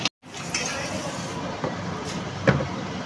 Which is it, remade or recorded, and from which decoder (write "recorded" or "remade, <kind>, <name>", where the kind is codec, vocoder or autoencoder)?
recorded